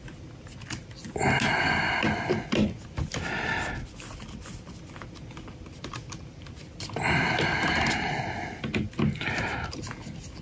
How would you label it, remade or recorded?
recorded